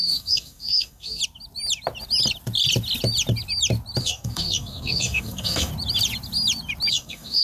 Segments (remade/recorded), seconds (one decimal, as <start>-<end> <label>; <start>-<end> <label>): 0.0-1.2 remade; 1.2-4.0 recorded; 4.0-5.7 remade; 5.7-6.9 recorded; 6.9-7.4 remade